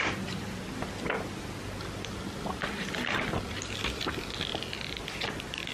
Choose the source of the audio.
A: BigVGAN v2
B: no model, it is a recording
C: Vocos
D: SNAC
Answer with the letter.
B